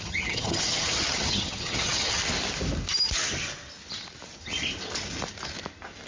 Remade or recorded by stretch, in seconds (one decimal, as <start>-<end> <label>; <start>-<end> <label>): 0.0-2.2 remade; 2.2-6.1 recorded